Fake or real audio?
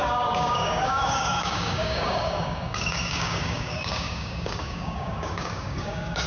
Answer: fake